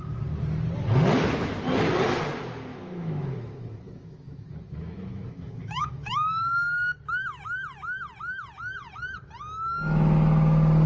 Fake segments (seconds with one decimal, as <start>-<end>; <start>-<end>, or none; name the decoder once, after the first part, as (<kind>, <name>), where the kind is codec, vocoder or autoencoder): 2.7-7.0 (autoencoder, DAC-VAE)